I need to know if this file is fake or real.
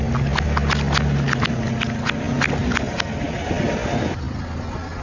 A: real